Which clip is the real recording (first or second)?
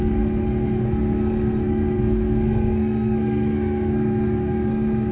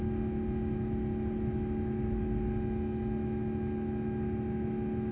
second